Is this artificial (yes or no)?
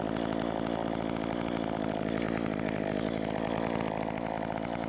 no